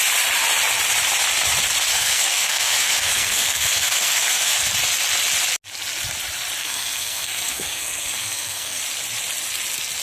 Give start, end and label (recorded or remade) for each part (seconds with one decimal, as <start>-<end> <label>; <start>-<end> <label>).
0.0-1.9 recorded; 1.9-4.7 remade; 4.7-6.6 recorded; 6.6-8.8 remade; 8.8-10.0 recorded